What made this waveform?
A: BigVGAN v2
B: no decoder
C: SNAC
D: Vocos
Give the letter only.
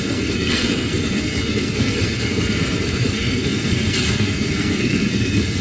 C